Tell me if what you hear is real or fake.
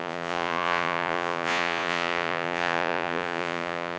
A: fake